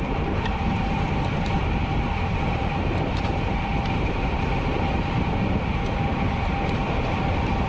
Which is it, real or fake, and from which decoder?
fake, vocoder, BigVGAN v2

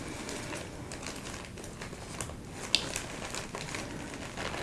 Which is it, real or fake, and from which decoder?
real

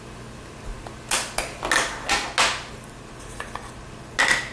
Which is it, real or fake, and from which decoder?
real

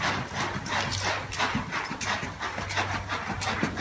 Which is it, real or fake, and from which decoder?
real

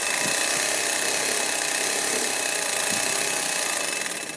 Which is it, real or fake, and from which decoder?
real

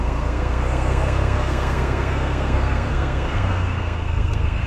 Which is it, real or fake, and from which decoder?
fake, codec, SNAC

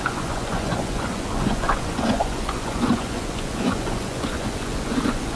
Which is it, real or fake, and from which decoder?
fake, vocoder, Vocos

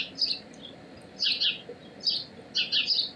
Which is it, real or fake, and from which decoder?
real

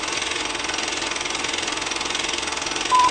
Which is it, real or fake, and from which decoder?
fake, vocoder, Vocos